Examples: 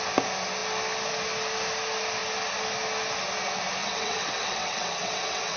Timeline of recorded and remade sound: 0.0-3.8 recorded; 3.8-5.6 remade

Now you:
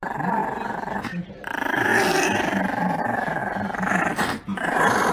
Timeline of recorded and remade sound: 0.0-1.9 remade; 1.9-3.0 recorded; 3.0-5.1 remade

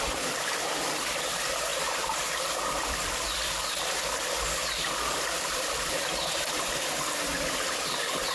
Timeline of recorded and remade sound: 0.0-1.7 recorded; 1.7-6.7 remade; 6.7-8.3 recorded

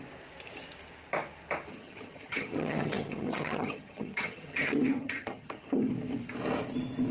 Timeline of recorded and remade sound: 0.0-1.7 recorded; 1.7-5.9 remade; 5.9-7.1 recorded

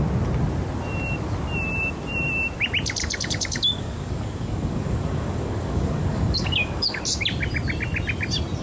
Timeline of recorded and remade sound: 0.0-3.0 recorded; 3.0-7.0 remade; 7.0-8.6 recorded

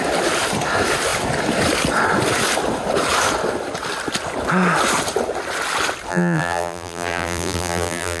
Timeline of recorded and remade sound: 0.0-6.1 recorded; 6.1-8.2 remade

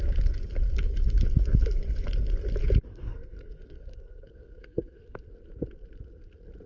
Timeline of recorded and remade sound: 0.0-2.9 recorded; 2.9-5.2 remade; 5.2-6.7 recorded

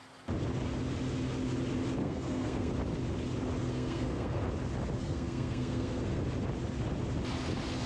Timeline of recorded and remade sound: 0.0-2.0 recorded; 2.0-2.7 remade; 2.7-3.6 recorded; 3.6-4.4 remade; 4.4-5.0 recorded; 5.0-6.2 remade; 6.2-7.9 recorded